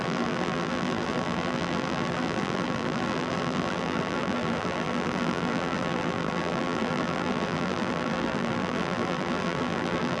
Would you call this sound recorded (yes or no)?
no